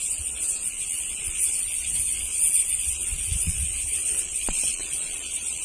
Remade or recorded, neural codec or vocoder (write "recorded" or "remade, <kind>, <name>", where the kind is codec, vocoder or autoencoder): remade, vocoder, Vocos